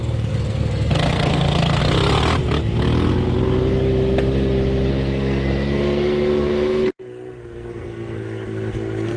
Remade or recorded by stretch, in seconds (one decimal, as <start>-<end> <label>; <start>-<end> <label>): 0.0-1.8 remade; 1.8-4.9 recorded; 4.9-9.2 remade